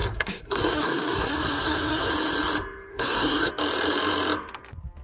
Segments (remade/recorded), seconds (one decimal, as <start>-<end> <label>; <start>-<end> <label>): 0.0-2.1 remade; 2.1-2.9 recorded; 2.9-3.5 remade; 3.5-5.0 recorded